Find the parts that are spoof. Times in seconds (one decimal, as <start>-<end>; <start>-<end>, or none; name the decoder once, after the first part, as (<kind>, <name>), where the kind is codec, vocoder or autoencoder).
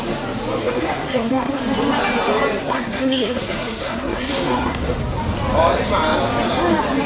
0.6-1.6 (codec, SNAC); 2.6-5.0